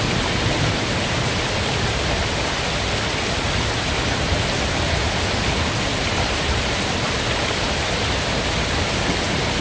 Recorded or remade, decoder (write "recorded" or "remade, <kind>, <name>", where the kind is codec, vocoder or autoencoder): recorded